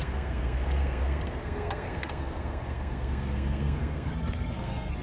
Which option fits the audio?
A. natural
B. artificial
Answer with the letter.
B